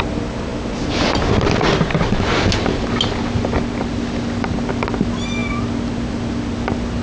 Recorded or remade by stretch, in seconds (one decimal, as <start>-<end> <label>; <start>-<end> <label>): 0.0-7.0 recorded